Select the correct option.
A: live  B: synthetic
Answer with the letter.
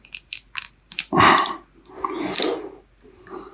A